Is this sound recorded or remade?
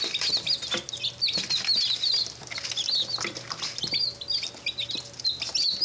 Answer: recorded